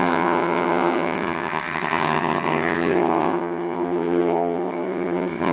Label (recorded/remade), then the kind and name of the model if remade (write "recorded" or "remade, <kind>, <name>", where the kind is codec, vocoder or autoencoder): remade, vocoder, HiFi-GAN